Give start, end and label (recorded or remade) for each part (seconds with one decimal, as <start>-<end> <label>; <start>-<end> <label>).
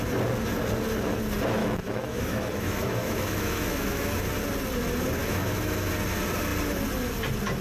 0.0-1.6 recorded; 1.6-4.2 remade; 4.2-5.2 recorded; 5.2-5.9 remade; 5.9-7.6 recorded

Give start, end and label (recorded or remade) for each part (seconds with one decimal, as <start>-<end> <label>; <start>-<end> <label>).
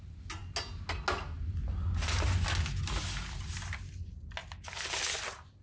0.0-5.6 recorded